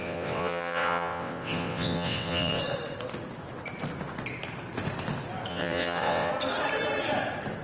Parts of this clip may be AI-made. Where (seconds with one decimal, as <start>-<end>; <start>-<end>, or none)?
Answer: 0.0-2.6; 5.5-6.3